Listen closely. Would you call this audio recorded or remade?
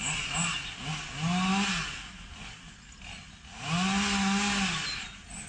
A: recorded